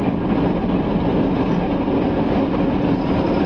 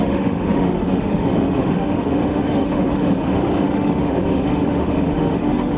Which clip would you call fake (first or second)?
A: second